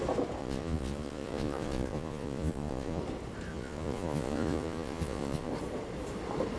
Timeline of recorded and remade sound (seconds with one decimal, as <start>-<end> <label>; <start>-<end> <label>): 0.0-0.4 recorded; 0.4-3.0 remade; 3.0-3.5 recorded; 3.5-5.5 remade; 5.5-6.6 recorded